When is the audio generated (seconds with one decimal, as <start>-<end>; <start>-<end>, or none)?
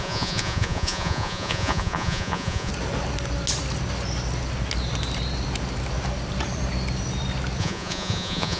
0.0-2.7; 7.6-8.6